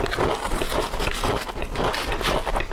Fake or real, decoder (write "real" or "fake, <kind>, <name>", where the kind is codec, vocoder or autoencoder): real